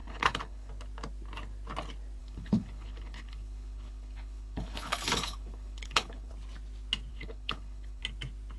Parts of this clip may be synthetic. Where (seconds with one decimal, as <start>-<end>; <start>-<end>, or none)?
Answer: 0.0-0.7; 2.2-6.3; 7.1-8.0